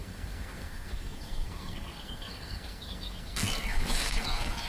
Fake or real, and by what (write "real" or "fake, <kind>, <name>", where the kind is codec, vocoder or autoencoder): fake, codec, SNAC